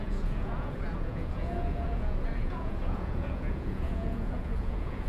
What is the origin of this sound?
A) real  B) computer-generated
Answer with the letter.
B